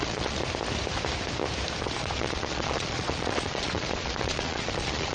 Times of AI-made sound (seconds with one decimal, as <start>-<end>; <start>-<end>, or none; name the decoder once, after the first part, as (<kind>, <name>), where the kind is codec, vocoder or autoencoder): 0.0-0.4 (vocoder, Vocos); 1.8-5.1